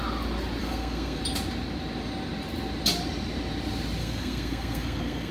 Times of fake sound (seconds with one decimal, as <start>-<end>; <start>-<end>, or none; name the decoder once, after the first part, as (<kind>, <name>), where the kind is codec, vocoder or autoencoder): 0.6-1.2 (codec, SNAC); 4.0-5.3

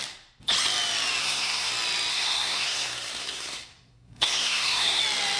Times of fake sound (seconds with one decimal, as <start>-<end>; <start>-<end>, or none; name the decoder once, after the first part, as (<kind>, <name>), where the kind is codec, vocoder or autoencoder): 1.2-1.7 (codec, SNAC); 2.1-5.0